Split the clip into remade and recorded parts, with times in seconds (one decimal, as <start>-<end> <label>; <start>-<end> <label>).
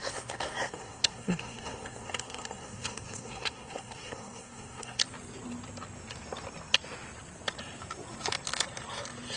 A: 0.0-5.0 remade; 5.0-9.4 recorded